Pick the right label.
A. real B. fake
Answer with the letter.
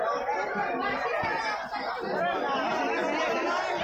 A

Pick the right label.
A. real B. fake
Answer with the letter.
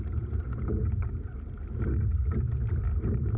A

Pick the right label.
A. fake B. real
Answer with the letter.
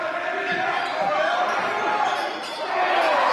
B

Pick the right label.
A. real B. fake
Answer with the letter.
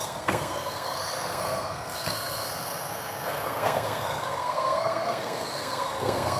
B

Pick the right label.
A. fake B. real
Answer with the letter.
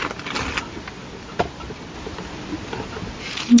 B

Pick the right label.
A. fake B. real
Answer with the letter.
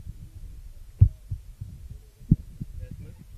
B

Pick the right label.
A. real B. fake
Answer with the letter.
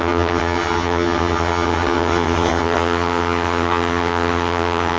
B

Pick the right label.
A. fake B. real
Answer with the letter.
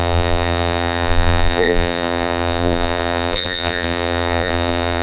A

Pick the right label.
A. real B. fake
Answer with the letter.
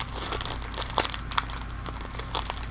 A